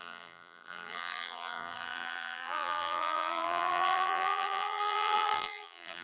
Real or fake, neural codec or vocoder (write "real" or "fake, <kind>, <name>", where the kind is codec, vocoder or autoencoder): fake, vocoder, BigVGAN v2